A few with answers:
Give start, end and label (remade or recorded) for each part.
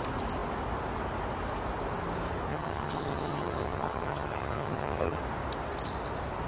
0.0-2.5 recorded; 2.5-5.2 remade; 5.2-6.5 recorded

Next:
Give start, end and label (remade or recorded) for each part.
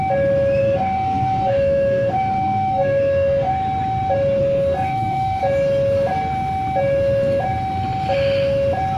0.0-0.6 recorded; 0.6-3.5 remade; 3.5-4.4 recorded; 4.4-5.4 remade; 5.4-9.0 recorded